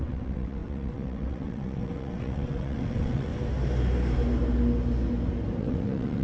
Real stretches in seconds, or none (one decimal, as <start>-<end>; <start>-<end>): 3.3-5.6